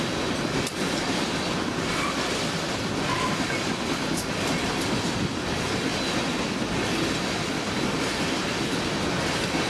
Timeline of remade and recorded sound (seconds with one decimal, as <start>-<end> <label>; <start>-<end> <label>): 0.0-9.7 recorded